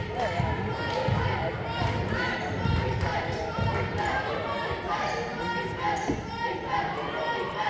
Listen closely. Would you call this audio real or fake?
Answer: fake